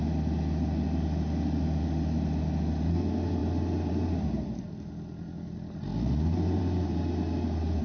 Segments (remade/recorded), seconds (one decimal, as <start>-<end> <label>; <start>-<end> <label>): 0.0-3.4 recorded; 3.4-4.6 remade; 4.6-7.8 recorded